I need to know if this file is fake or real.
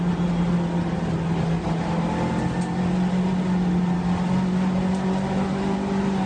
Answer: real